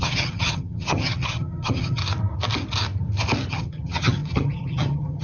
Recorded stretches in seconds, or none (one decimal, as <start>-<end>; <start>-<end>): 2.0-3.5